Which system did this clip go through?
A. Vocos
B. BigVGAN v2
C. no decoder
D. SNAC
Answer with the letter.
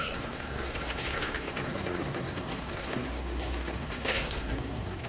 D